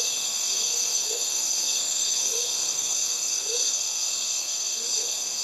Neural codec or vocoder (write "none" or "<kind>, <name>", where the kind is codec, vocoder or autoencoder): codec, SNAC